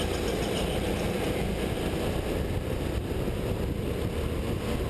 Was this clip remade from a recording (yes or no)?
no